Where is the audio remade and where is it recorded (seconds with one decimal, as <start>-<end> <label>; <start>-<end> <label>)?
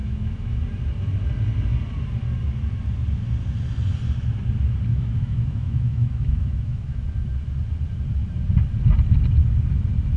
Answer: 0.0-0.6 remade; 0.6-4.9 recorded; 4.9-7.0 remade; 7.0-10.2 recorded